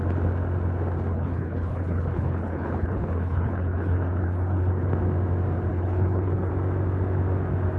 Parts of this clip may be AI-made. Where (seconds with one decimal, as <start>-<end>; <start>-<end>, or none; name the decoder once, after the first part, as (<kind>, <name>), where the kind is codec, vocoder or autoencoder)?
1.1-4.9 (codec, HILCodec); 5.7-6.5